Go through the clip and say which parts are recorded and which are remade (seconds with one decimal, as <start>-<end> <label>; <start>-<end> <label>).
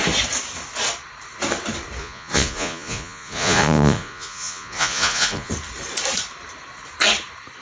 0.0-2.0 recorded; 2.0-5.5 remade; 5.5-7.6 recorded